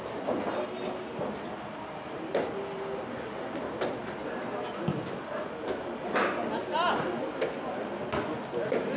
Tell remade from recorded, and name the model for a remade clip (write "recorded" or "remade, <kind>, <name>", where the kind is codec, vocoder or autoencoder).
recorded